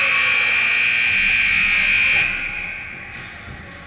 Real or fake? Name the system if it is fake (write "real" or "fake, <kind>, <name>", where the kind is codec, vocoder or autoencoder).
real